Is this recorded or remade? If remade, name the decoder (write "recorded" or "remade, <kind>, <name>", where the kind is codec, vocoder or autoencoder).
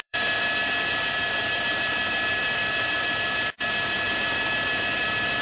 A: remade, vocoder, BigVGAN v2